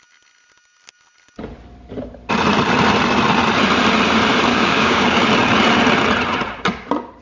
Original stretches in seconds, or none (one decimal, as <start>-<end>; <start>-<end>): 0.0-4.5; 5.2-7.2